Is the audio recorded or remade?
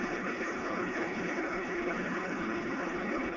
remade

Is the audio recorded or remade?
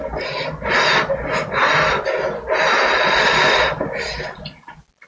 recorded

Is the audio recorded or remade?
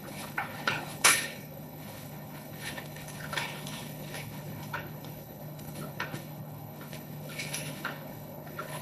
remade